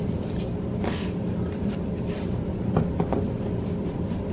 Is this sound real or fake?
real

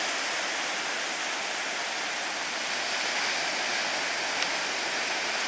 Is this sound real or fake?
real